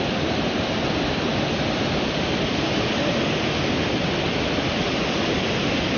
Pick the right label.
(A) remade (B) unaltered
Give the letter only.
B